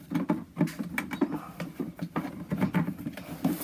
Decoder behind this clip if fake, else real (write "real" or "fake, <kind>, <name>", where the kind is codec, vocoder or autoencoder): real